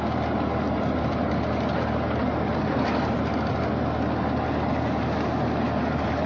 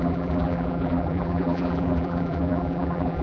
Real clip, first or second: first